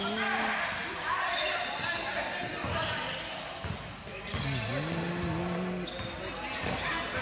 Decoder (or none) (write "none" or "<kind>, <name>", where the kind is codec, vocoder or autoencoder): none